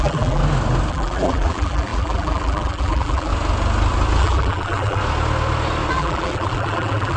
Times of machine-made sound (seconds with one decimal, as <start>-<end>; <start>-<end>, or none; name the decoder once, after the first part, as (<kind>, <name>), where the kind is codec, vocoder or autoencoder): 0.0-0.4 (vocoder, BigVGAN v2); 0.9-3.3; 4.2-5.0; 5.9-7.2